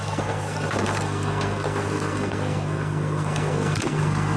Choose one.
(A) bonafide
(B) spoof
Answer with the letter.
B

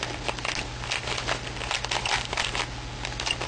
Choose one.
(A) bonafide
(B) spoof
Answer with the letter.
A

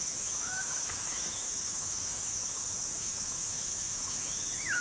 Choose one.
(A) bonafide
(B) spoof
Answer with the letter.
B